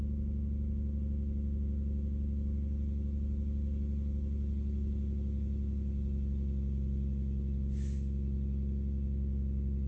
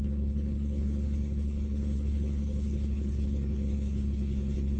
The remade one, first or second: second